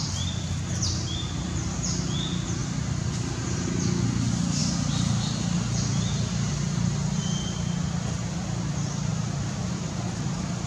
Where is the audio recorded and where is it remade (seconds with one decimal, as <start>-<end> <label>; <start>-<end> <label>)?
0.0-2.6 recorded; 2.6-3.1 remade; 3.1-9.1 recorded; 9.1-10.7 remade